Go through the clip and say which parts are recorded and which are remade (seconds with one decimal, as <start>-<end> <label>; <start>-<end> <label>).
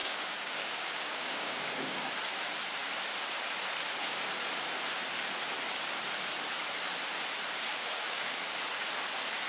0.0-2.1 remade; 2.1-7.7 recorded; 7.7-8.6 remade; 8.6-9.5 recorded